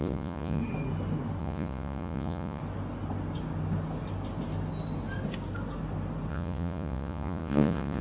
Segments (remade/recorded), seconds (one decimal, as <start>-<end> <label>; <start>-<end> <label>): 0.0-0.6 remade; 0.6-1.4 recorded; 1.4-2.6 remade; 2.6-6.3 recorded; 6.3-8.0 remade